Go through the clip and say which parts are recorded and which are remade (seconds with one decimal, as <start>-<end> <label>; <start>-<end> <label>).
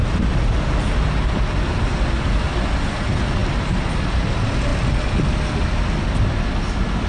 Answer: 0.0-7.1 recorded